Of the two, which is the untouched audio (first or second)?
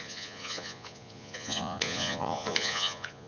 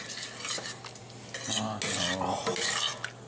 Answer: second